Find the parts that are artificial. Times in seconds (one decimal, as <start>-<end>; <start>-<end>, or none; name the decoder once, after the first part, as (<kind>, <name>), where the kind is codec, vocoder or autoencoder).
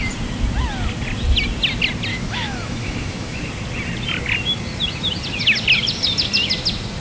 2.1-3.4 (autoencoder, DAC-VAE)